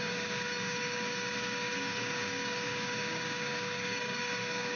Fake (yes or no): yes